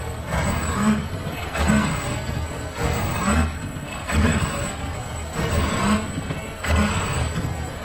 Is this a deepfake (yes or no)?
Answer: yes